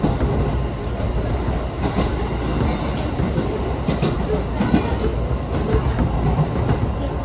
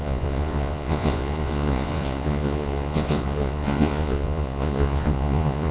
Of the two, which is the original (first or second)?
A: first